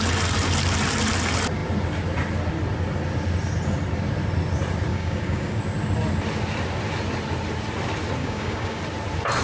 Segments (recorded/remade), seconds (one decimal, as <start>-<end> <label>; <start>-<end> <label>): 0.0-4.9 recorded; 4.9-5.6 remade; 5.6-8.2 recorded; 8.2-8.8 remade; 8.8-9.4 recorded

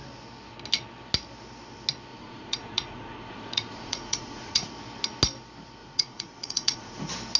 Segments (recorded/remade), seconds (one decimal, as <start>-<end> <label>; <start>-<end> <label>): 0.0-2.1 recorded; 2.1-4.7 remade; 4.7-5.8 recorded; 5.8-7.0 remade; 7.0-7.4 recorded

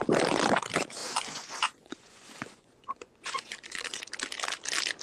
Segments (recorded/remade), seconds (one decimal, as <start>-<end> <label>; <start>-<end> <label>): 0.0-1.0 recorded; 1.0-4.0 remade; 4.0-5.0 recorded